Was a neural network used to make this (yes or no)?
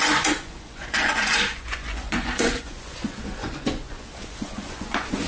yes